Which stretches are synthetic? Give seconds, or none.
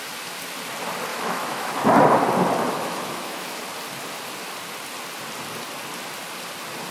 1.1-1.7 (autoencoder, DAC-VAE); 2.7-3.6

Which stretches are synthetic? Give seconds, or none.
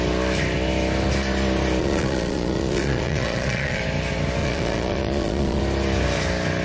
1.8-3.8 (vocoder, Vocos); 4.4-5.6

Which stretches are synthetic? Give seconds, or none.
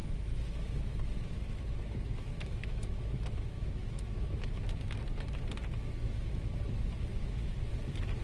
0.0-4.6 (autoencoder, DAC-VAE); 6.0-6.5; 7.2-7.7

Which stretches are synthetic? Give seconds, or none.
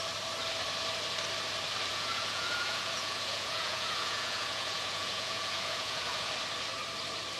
1.9-6.3 (vocoder, Vocos)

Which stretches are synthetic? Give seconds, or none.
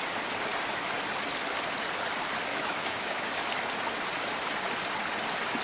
2.5-3.5 (autoencoder, DAC-VAE)